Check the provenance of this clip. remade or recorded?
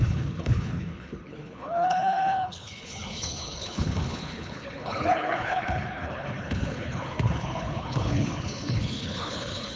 remade